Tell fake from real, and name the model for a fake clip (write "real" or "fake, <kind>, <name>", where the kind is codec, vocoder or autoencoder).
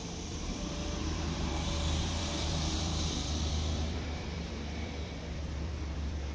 fake, vocoder, BigVGAN v2